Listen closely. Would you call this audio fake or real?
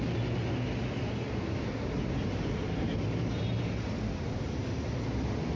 real